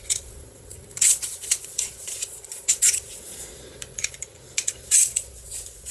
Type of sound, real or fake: fake